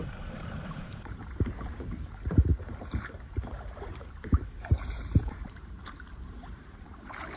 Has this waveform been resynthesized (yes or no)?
yes